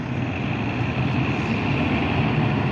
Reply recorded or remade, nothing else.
recorded